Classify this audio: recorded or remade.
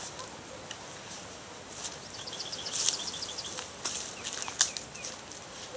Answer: recorded